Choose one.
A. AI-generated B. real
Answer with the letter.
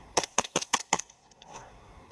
A